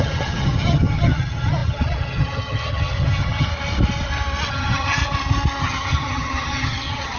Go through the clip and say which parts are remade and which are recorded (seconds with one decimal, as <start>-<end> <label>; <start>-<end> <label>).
0.0-3.5 remade; 3.5-4.5 recorded; 4.5-5.0 remade; 5.0-5.6 recorded; 5.6-7.2 remade